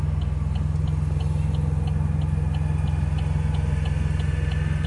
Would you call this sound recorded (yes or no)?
yes